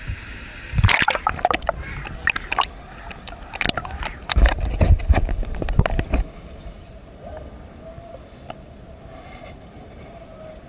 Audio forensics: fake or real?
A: real